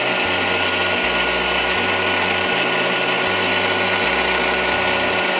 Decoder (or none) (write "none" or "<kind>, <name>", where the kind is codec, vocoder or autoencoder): none